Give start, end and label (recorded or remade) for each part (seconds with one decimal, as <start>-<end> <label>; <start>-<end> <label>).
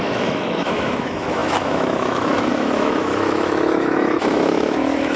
0.0-5.2 remade